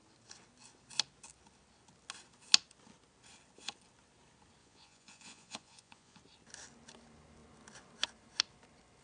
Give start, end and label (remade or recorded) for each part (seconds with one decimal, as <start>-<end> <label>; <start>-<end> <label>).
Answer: 0.0-4.6 recorded; 4.6-6.2 remade; 6.2-9.0 recorded